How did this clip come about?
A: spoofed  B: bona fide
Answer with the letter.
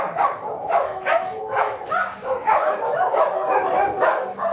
A